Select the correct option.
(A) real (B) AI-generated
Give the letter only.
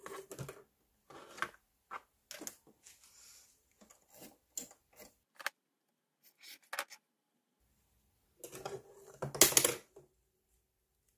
A